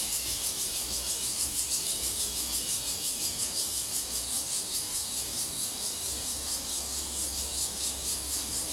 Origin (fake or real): fake